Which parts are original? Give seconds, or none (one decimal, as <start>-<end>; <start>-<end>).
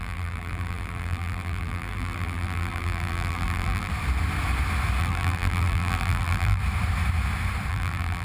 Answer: 3.9-5.0; 6.6-7.7